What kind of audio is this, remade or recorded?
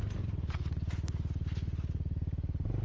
recorded